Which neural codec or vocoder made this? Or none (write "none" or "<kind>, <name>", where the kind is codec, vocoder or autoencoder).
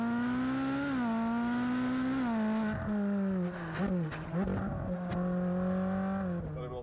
none